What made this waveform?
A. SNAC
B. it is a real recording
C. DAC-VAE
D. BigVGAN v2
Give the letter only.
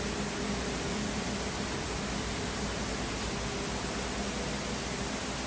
B